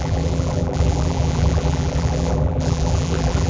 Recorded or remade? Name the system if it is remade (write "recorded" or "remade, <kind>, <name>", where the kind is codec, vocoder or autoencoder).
remade, vocoder, BigVGAN v2